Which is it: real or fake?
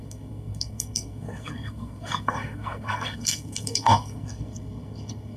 fake